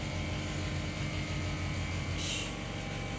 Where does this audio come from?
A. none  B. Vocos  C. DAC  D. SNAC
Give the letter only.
A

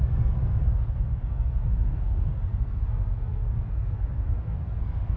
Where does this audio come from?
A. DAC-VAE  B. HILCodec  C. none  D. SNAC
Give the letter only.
D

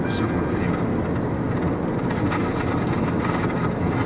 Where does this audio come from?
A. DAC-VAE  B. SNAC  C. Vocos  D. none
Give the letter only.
D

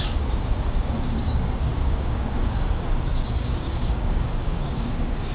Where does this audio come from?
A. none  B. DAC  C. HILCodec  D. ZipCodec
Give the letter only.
B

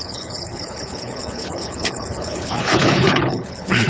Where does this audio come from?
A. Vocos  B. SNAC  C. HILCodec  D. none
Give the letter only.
C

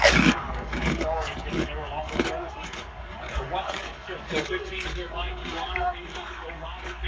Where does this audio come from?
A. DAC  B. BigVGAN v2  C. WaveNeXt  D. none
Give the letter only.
A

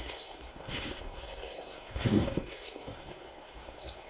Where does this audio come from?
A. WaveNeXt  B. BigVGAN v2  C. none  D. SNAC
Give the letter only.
D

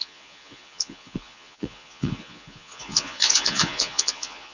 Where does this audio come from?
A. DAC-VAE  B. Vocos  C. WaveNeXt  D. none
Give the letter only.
B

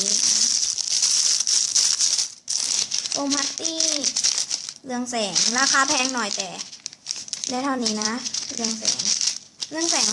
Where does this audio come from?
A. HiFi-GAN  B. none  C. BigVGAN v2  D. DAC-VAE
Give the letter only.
C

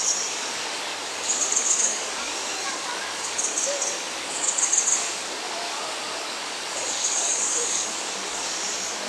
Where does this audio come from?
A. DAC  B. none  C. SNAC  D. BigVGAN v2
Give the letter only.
A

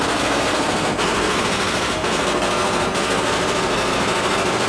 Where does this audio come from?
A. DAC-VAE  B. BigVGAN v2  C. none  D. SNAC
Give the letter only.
D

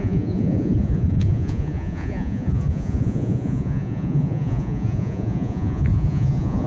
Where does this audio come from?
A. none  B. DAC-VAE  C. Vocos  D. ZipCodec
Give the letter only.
C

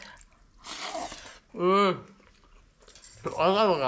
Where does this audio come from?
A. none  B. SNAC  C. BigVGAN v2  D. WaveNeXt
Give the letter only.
A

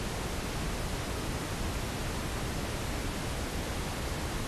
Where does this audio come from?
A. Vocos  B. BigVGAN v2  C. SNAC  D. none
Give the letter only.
D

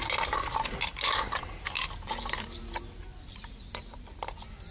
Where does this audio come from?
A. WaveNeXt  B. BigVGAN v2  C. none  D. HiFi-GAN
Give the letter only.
C